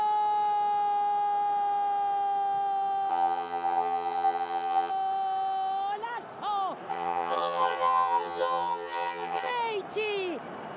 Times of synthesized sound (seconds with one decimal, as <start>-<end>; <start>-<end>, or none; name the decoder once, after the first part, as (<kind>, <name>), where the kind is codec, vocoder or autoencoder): 3.1-4.9 (vocoder, HiFi-GAN); 6.9-9.5

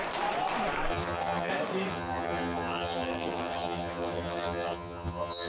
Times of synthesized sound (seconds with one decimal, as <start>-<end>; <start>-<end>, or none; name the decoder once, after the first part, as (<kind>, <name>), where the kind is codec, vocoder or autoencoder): 0.9-1.5 (vocoder, HiFi-GAN); 1.9-5.5

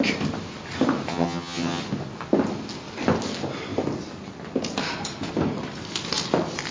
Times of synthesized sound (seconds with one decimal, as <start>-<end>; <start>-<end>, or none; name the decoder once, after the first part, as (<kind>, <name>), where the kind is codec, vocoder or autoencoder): 1.1-1.8 (vocoder, HiFi-GAN)

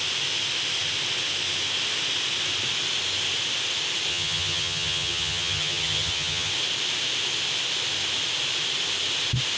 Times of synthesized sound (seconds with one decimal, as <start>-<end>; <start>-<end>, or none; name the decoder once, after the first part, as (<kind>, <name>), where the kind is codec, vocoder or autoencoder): 4.1-6.5 (vocoder, HiFi-GAN)

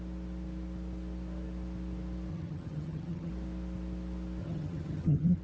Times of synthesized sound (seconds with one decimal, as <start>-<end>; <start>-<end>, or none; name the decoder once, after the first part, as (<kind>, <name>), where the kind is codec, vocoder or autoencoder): 2.3-3.3 (vocoder, HiFi-GAN); 4.4-5.4

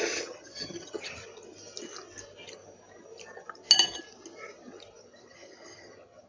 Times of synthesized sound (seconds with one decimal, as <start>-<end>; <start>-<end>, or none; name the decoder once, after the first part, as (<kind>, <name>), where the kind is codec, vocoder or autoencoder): 0.0-1.2 (vocoder, HiFi-GAN); 5.0-6.3

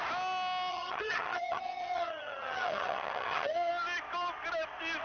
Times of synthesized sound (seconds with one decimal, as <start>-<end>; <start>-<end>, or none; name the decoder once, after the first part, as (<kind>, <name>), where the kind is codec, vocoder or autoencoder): 0.7-3.7 (vocoder, HiFi-GAN)

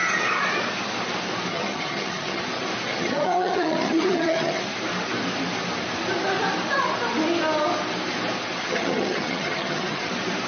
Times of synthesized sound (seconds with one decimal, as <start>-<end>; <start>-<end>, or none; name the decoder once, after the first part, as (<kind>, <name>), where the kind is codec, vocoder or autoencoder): 1.5-2.4 (vocoder, HiFi-GAN); 2.9-4.6; 8.6-10.1